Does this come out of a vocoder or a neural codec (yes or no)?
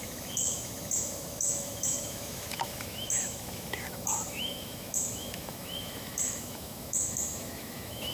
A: yes